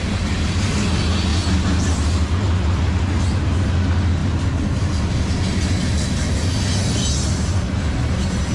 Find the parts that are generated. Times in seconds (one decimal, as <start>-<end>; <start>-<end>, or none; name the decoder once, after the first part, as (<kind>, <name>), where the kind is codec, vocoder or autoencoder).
none